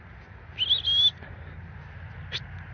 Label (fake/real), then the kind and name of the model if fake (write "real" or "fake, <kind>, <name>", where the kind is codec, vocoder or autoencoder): real